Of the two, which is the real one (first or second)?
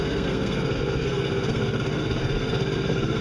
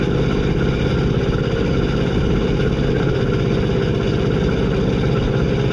second